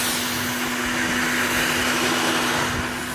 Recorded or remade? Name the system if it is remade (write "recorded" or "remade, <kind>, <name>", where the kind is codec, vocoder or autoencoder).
recorded